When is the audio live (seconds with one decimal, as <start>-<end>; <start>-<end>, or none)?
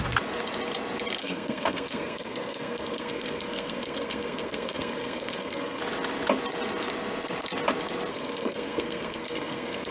0.0-1.2; 5.8-8.1